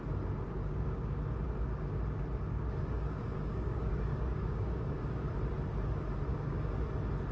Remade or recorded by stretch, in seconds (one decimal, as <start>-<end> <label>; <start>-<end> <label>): 0.0-0.6 recorded; 0.6-1.2 remade; 1.2-2.5 recorded; 2.5-5.3 remade; 5.3-6.3 recorded; 6.3-6.8 remade; 6.8-7.3 recorded